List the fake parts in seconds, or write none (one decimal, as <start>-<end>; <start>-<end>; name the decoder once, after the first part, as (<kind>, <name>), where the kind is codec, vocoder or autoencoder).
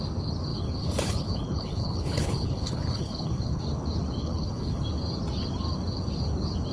0.5-3.6 (codec, HILCodec); 4.2-4.8